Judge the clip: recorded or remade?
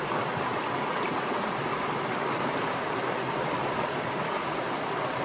recorded